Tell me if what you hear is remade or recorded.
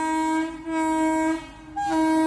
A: recorded